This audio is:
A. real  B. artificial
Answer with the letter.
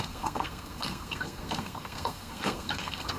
B